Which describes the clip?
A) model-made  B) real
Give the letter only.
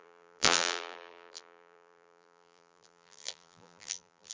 A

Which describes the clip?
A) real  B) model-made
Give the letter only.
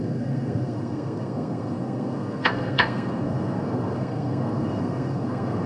B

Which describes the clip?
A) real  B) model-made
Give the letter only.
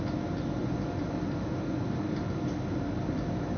A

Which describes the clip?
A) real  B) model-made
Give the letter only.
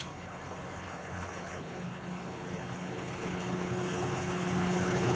B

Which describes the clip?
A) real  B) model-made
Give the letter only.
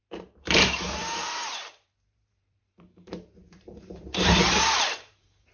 B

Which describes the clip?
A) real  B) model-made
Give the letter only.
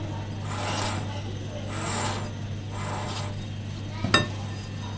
A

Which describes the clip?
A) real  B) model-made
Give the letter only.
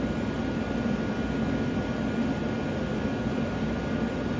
A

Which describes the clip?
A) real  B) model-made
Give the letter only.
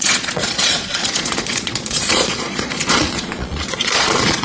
B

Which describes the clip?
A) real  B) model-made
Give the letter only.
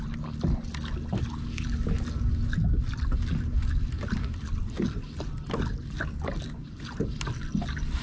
A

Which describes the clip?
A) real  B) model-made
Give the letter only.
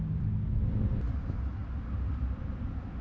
A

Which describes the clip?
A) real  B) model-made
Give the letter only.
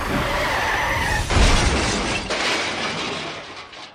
A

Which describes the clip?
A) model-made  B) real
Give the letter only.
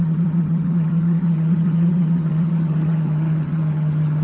A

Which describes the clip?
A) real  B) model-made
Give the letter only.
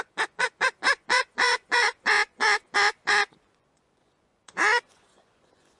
B